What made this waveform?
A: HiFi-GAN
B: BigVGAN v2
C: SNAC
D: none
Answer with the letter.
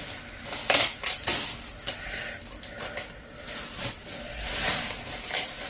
D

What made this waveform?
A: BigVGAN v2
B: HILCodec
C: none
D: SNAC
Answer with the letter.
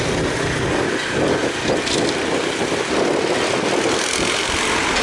C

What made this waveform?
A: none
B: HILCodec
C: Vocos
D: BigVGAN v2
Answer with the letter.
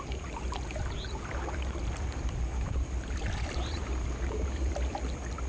D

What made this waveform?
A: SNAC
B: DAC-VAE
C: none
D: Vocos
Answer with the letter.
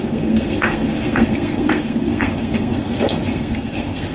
A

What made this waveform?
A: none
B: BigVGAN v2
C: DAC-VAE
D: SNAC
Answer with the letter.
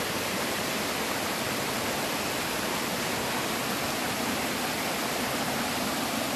B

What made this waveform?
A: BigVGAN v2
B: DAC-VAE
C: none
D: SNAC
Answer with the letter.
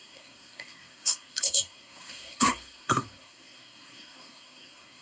D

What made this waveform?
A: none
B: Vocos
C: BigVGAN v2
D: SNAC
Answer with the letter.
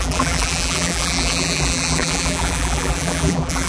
C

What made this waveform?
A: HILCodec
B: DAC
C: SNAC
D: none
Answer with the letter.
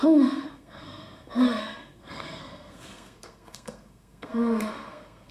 C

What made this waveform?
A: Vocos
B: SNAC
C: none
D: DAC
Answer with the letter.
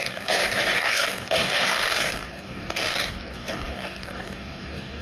D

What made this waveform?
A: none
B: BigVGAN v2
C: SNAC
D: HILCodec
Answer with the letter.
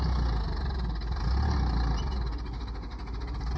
A